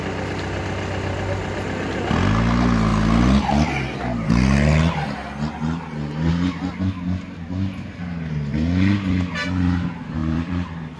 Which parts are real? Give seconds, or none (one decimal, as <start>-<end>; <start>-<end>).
0.0-10.2

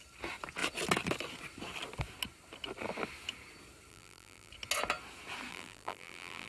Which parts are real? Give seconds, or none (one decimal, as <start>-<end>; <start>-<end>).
0.0-3.9; 4.5-5.5

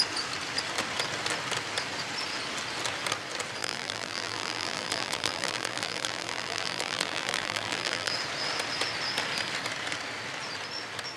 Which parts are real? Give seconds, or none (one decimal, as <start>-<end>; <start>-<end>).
0.0-3.6; 8.1-11.2

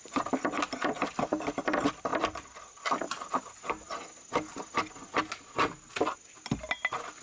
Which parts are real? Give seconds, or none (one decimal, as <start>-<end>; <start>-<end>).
0.0-2.1; 2.8-7.2

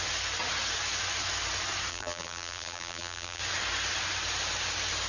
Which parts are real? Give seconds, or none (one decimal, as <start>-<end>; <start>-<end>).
0.0-1.9; 3.4-5.1

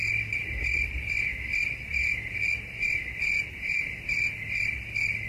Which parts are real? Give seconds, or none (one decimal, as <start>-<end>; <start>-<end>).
0.0-5.3